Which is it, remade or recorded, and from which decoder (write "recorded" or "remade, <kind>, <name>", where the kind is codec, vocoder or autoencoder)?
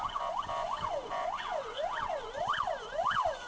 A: remade, vocoder, Vocos